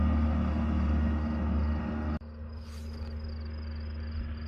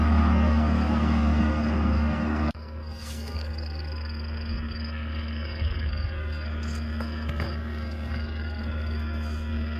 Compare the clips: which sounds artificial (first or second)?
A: second